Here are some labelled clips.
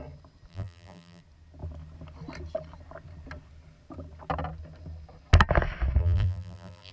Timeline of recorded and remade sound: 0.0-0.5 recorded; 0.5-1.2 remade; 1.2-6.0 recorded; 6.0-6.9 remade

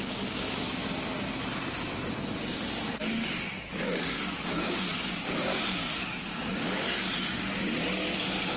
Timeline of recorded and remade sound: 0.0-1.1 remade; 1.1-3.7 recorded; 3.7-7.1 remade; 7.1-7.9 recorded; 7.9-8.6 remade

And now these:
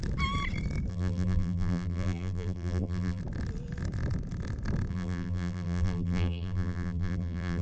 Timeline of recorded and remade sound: 0.0-0.9 recorded; 0.9-3.2 remade; 3.2-4.9 recorded; 4.9-7.6 remade

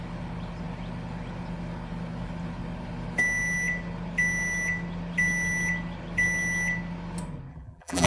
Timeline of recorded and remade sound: 0.0-7.5 recorded; 7.5-8.1 remade

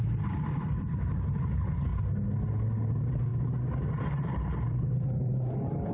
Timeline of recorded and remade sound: 0.0-1.9 remade; 1.9-2.9 recorded; 2.9-3.3 remade; 3.3-4.0 recorded; 4.0-5.9 remade

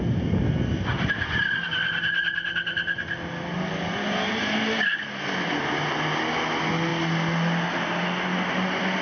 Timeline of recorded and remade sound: 0.0-9.0 recorded